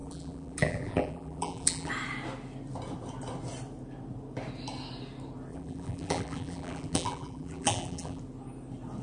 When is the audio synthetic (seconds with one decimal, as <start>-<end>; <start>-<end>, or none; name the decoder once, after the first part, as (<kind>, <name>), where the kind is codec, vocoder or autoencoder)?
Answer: 0.0-1.9 (vocoder, BigVGAN v2); 5.5-8.2

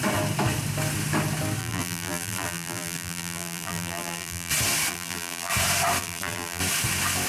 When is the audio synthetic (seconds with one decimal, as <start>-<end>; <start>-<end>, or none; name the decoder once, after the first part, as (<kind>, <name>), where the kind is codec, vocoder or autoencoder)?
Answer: 1.6-4.5 (vocoder, BigVGAN v2); 4.9-5.5; 6.0-6.6

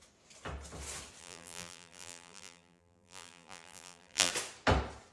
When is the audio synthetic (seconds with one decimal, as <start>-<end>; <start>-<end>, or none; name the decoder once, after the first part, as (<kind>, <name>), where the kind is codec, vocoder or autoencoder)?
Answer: 1.2-4.3 (vocoder, BigVGAN v2)

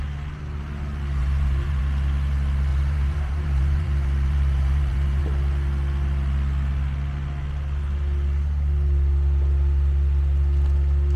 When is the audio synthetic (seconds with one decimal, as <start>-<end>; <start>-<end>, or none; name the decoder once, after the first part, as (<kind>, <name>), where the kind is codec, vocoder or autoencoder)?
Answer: 1.2-1.8 (vocoder, BigVGAN v2); 2.7-5.2

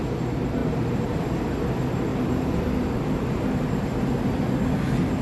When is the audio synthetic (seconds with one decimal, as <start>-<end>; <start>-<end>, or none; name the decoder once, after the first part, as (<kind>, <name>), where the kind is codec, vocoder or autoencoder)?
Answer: 0.6-1.1 (vocoder, BigVGAN v2); 2.1-3.7